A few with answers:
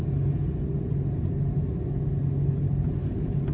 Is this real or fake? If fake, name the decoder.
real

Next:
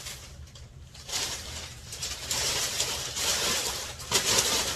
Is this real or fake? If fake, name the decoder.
fake, vocoder, BigVGAN v2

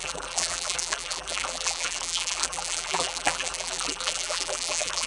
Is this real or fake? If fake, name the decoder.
fake, vocoder, BigVGAN v2